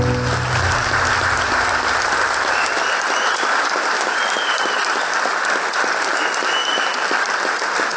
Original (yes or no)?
yes